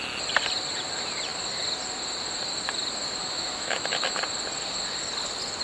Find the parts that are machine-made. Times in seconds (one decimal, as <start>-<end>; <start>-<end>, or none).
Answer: 3.2-4.2

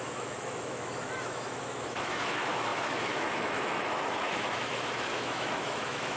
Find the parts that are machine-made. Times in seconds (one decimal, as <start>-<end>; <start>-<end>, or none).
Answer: 0.0-6.2

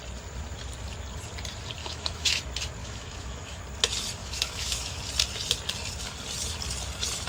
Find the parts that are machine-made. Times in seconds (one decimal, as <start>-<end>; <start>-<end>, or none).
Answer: 1.8-2.4; 2.8-3.6; 4.2-5.0

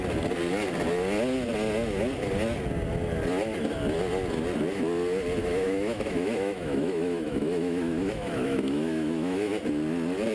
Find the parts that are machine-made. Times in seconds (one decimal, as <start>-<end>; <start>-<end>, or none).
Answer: 5.4-9.5

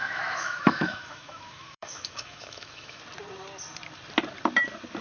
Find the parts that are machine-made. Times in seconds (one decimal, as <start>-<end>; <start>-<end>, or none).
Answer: 0.0-3.0

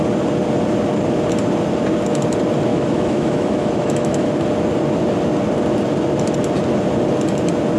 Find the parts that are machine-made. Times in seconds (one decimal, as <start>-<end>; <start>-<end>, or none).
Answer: 2.7-4.3

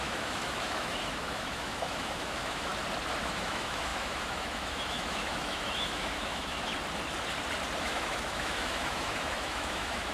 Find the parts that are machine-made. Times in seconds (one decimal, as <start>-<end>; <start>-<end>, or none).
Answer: 0.0-2.7; 3.2-6.7; 7.8-10.1